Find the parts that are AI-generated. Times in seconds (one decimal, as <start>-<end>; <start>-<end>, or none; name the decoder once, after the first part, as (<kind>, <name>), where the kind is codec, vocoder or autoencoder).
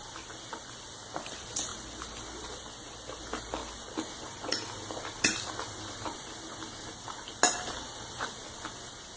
none